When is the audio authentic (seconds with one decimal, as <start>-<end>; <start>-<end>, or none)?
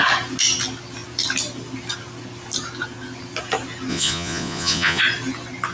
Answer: 0.0-3.9; 5.0-5.7